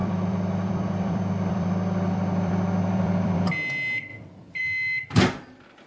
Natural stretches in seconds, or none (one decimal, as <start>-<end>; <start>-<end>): 3.5-4.1; 4.6-5.9